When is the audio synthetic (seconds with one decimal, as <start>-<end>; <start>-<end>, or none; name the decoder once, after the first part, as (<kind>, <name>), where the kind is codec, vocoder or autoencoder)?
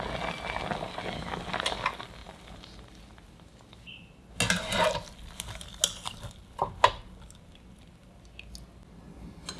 2.2-2.9 (vocoder, BigVGAN v2)